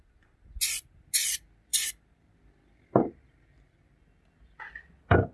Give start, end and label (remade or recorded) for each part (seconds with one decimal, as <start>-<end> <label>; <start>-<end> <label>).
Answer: 0.0-5.3 recorded